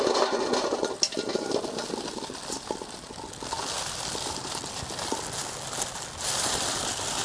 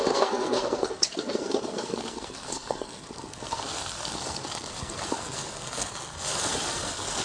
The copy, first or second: second